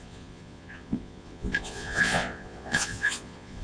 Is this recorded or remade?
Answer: remade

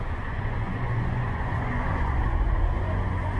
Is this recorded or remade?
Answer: remade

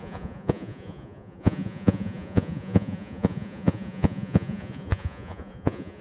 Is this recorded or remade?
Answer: remade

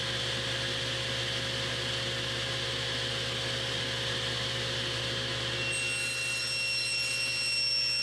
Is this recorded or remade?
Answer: recorded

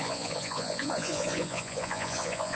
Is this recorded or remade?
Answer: remade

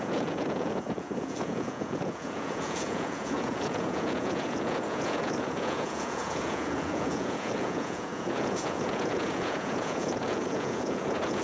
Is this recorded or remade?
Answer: remade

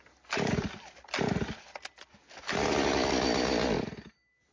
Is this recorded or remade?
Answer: recorded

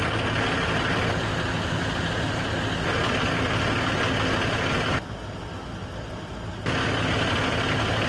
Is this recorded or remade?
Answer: recorded